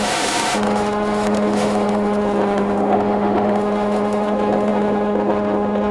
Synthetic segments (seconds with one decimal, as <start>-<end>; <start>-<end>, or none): 0.0-5.9